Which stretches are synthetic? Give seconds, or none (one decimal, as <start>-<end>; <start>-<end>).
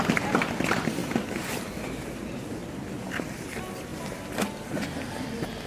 none